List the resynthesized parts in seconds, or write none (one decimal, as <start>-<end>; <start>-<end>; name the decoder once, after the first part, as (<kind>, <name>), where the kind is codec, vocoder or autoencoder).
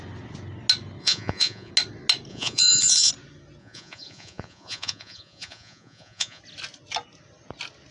1.0-1.7 (vocoder, Vocos); 2.3-3.1; 3.6-6.4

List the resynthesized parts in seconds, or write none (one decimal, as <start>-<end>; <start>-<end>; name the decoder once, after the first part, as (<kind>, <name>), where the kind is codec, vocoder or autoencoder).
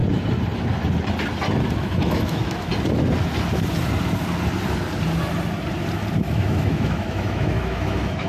1.8-2.7 (autoencoder, DAC-VAE); 6.2-8.3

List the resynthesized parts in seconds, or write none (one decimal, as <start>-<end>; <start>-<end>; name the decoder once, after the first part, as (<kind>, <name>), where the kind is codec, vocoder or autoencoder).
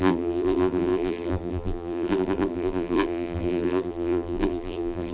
0.0-5.1 (vocoder, BigVGAN v2)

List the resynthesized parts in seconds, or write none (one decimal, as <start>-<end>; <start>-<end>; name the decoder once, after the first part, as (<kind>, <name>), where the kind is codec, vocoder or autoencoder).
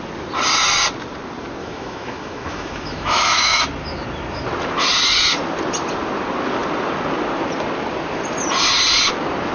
1.6-3.6 (autoencoder, DAC-VAE)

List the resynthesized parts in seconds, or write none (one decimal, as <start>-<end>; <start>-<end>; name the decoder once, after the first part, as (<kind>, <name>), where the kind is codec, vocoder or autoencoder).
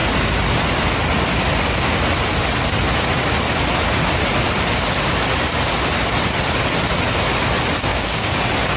7.9-8.4 (codec, DAC)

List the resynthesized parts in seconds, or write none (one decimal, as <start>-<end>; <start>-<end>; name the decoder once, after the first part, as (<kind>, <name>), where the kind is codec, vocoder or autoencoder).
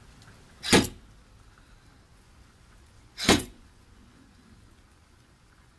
2.1-5.8 (vocoder, Vocos)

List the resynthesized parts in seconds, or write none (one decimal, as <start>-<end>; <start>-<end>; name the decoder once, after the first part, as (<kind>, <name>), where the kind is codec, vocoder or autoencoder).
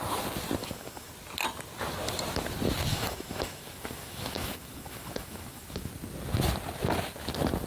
0.6-1.1 (autoencoder, DAC-VAE); 2.9-5.9